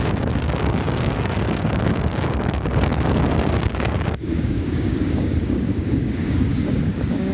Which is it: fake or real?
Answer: fake